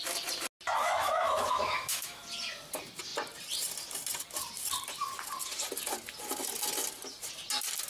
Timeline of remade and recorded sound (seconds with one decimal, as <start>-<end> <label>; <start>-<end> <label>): 0.0-0.8 recorded; 0.8-2.2 remade; 2.2-7.9 recorded